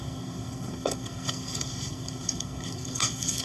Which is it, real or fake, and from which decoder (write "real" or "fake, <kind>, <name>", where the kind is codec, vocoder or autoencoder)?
fake, codec, SNAC